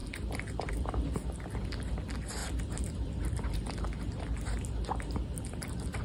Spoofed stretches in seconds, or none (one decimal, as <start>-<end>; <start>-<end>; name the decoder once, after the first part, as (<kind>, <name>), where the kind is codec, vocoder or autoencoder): 1.2-1.7 (vocoder, BigVGAN v2)